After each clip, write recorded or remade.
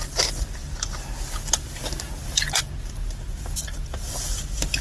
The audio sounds recorded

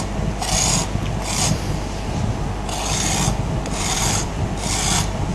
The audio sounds recorded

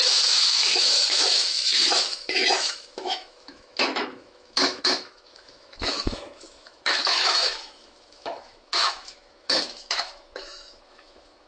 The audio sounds remade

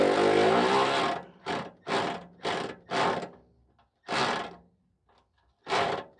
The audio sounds recorded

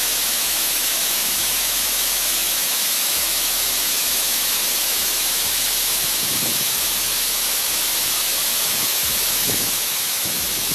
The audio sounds remade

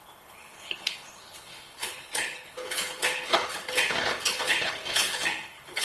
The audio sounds remade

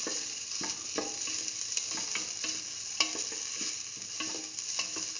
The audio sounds recorded